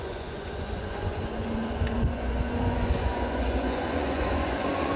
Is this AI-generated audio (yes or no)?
yes